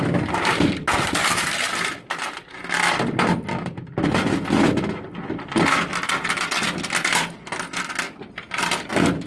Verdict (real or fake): real